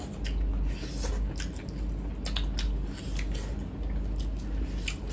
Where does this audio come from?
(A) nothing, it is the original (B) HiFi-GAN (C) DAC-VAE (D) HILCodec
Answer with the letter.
A